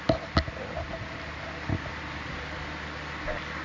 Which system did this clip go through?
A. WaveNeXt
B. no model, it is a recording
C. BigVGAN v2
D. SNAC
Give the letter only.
B